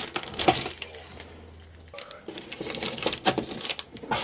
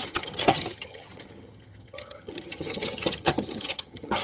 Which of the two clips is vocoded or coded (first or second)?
second